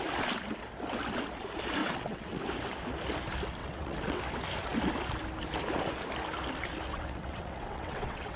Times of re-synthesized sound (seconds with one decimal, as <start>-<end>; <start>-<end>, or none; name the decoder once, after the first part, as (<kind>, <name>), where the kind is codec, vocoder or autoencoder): 1.8-2.4 (vocoder, WaveNeXt); 3.6-4.2; 6.9-8.4